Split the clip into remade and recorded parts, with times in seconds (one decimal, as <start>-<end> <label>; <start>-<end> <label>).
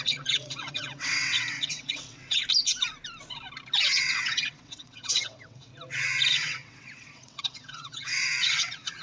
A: 0.0-2.4 remade; 2.4-3.8 recorded; 3.8-5.7 remade; 5.7-6.3 recorded; 6.3-9.0 remade